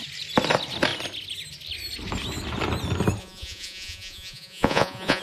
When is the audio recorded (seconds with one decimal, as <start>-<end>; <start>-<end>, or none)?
0.0-3.2